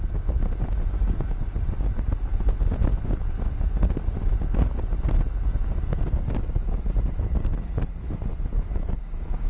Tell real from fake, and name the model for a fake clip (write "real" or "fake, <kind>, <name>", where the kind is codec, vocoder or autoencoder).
real